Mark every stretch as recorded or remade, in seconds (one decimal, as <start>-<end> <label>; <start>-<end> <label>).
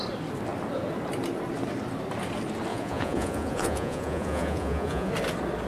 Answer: 0.0-2.7 recorded; 2.7-5.1 remade; 5.1-5.7 recorded